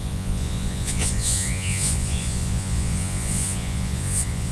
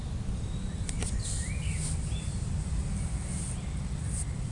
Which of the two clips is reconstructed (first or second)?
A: first